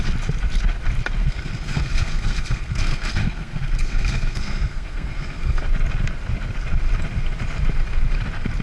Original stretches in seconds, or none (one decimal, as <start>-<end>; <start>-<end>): 0.0-1.2; 5.6-8.6